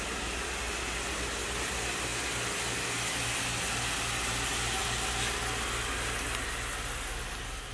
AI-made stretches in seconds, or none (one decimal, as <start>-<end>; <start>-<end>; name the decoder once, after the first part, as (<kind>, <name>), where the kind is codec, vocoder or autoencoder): none